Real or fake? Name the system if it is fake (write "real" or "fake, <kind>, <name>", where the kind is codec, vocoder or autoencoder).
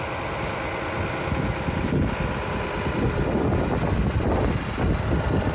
real